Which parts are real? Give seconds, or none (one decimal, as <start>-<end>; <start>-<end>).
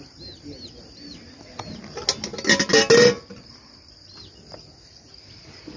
0.0-5.8